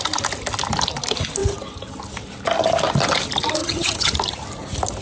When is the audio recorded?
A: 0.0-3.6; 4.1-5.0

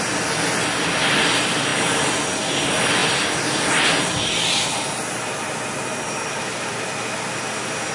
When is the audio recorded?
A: 0.0-7.9

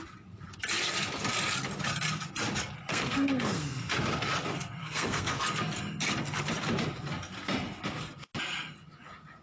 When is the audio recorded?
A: 0.0-2.9; 3.9-4.8; 5.3-9.4

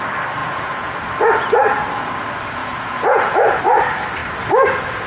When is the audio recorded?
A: 0.0-0.4; 1.0-2.6; 3.6-5.1

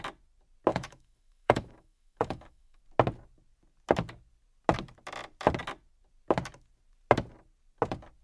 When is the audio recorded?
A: 0.0-0.7; 2.8-8.2

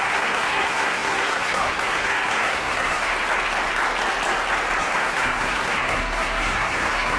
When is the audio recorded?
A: 3.1-4.8

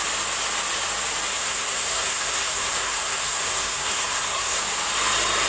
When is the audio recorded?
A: 0.0-1.3; 4.6-5.5

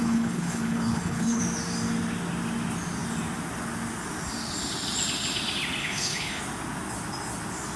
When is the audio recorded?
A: 1.4-5.8; 6.4-7.8